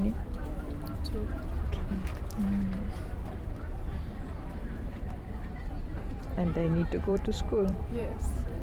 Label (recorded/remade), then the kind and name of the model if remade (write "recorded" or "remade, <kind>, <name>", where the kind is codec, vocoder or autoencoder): remade, vocoder, BigVGAN v2